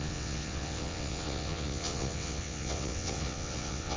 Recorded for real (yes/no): no